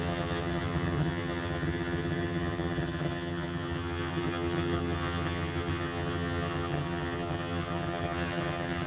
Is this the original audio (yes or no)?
no